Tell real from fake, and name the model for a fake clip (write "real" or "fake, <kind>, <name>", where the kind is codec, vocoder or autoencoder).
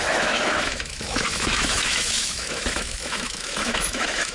fake, autoencoder, DAC-VAE